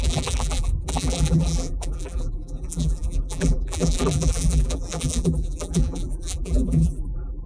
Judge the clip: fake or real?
fake